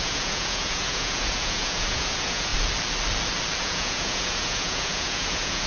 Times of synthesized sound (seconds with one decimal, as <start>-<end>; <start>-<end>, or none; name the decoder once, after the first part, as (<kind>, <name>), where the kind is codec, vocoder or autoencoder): 0.0-2.5 (vocoder, Vocos); 3.6-5.7